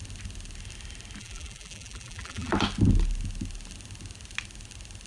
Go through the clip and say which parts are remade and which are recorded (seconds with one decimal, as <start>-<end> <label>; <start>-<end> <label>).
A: 0.0-1.2 recorded; 1.2-2.5 remade; 2.5-5.1 recorded

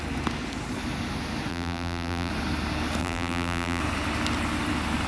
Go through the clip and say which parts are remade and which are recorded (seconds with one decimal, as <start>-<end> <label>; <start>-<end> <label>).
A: 0.0-1.5 recorded; 1.5-2.3 remade; 2.3-3.0 recorded; 3.0-3.8 remade; 3.8-5.1 recorded

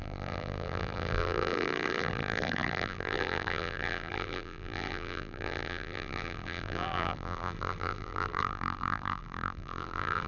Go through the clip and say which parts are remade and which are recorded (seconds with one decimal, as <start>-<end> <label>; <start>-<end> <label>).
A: 0.0-10.3 remade

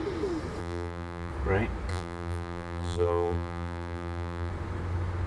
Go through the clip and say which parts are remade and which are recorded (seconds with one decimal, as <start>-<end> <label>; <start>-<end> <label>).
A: 0.0-0.6 recorded; 0.6-1.3 remade; 1.3-1.9 recorded; 1.9-4.5 remade; 4.5-5.3 recorded

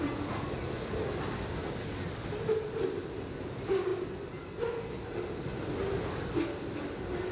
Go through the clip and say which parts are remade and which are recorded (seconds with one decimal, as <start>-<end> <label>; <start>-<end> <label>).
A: 0.0-7.3 recorded

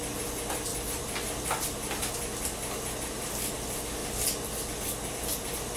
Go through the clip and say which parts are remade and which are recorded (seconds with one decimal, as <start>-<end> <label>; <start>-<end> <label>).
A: 0.0-5.8 recorded

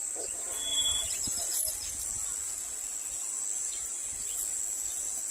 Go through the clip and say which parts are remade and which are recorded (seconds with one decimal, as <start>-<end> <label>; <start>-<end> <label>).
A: 0.0-0.7 recorded; 0.7-1.7 remade; 1.7-5.3 recorded